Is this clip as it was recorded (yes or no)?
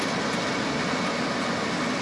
yes